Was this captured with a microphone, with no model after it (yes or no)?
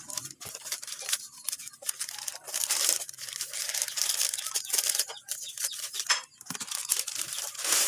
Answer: yes